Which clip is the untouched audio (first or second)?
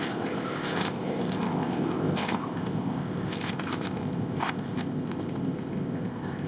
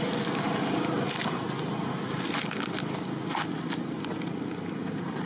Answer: second